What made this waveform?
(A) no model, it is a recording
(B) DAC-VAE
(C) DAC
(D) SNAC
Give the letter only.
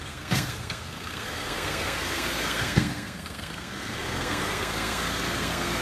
D